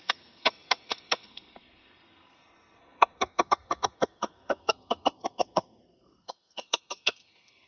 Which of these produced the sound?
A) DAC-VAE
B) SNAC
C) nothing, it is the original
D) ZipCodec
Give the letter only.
B